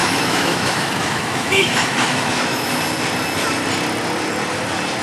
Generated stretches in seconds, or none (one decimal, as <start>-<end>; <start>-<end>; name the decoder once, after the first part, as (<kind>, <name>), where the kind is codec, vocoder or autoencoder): 0.0-2.7 (autoencoder, DAC-VAE)

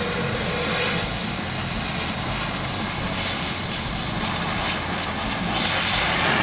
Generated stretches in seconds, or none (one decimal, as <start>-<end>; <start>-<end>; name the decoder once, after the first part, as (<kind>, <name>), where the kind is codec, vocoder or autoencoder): none

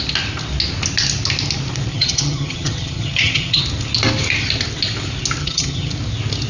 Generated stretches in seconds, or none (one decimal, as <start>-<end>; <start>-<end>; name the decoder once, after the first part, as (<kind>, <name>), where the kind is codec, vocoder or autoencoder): 1.9-3.6 (vocoder, HiFi-GAN); 5.4-5.9